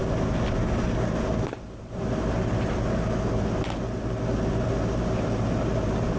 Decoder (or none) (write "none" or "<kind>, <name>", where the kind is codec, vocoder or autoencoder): none